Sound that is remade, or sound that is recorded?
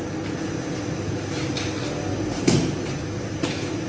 recorded